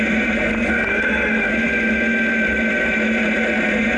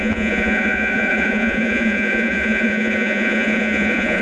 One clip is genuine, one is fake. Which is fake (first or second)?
second